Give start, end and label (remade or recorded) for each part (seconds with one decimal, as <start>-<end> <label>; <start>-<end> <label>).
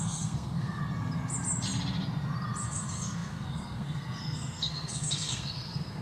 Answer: 0.0-0.8 remade; 0.8-2.6 recorded; 2.6-6.0 remade